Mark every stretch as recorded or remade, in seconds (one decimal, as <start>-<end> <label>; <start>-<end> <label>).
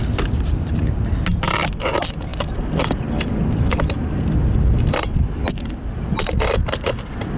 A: 0.0-7.4 recorded